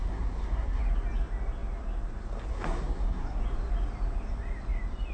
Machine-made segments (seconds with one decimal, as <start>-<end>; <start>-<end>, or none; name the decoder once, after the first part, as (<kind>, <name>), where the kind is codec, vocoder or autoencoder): 0.0-0.8 (codec, SNAC); 2.5-3.4